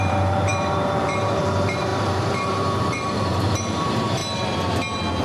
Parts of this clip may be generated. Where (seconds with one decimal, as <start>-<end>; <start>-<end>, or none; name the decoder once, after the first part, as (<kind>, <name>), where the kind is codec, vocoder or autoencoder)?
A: 0.0-4.2 (vocoder, BigVGAN v2)

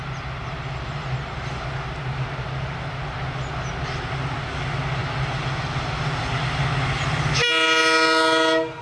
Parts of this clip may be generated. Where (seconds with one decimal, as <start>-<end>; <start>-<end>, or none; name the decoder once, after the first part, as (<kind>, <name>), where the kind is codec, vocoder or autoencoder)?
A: none

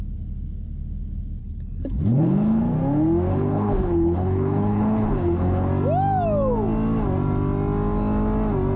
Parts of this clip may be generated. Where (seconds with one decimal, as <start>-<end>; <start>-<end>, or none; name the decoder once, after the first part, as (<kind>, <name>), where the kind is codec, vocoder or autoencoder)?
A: 1.4-2.6 (codec, HILCodec); 3.3-5.7

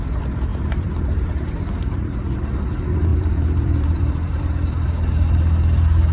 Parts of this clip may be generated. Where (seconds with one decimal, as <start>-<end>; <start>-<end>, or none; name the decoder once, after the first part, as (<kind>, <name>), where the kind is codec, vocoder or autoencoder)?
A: 0.5-2.7 (vocoder, BigVGAN v2); 3.1-4.4